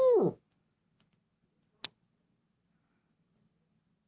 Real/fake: real